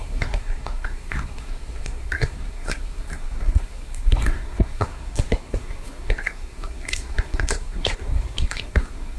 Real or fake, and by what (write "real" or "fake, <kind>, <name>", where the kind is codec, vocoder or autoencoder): fake, codec, SNAC